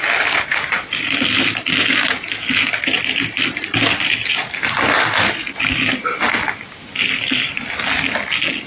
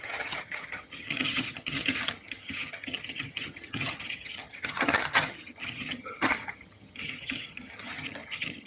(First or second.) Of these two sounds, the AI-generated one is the second